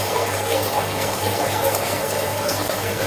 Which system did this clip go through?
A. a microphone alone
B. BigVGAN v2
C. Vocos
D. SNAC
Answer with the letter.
D